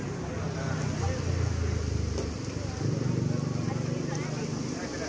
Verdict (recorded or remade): recorded